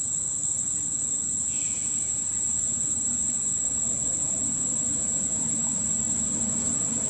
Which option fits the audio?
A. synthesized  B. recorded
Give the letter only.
B